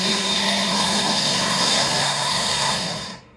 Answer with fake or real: fake